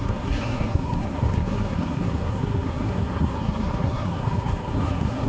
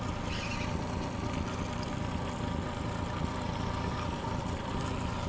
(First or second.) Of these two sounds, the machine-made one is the first